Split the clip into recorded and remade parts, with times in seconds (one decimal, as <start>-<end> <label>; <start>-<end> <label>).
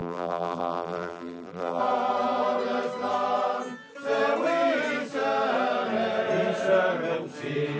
0.0-1.8 remade; 1.8-7.8 recorded